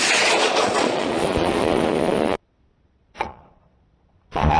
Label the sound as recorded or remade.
remade